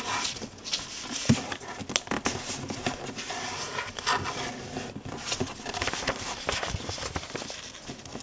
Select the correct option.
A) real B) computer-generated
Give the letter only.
A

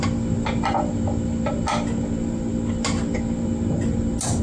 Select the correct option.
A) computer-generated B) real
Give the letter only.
B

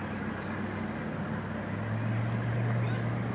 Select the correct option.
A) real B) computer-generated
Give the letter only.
A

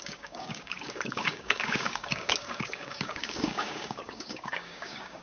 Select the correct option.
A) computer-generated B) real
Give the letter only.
A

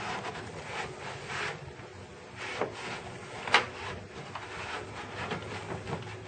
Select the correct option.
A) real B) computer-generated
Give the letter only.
A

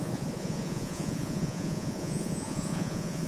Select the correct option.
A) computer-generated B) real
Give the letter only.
A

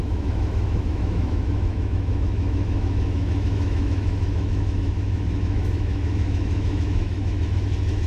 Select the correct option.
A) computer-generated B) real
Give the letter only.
A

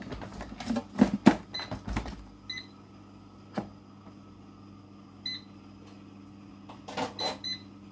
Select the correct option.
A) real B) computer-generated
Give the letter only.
A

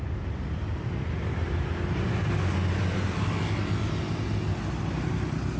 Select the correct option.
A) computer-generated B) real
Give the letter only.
B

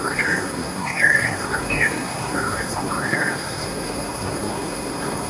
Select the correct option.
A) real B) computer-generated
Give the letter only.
B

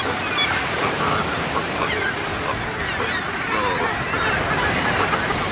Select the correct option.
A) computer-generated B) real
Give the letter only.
B